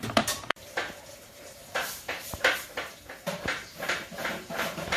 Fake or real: fake